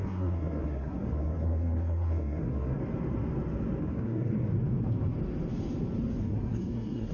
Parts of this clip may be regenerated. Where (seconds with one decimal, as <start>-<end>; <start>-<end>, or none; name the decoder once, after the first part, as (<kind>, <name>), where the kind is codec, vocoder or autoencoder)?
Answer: 0.0-2.8 (codec, SNAC); 3.8-4.5; 6.2-7.1